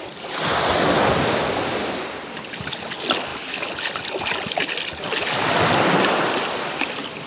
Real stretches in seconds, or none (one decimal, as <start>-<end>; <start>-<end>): 0.0-7.3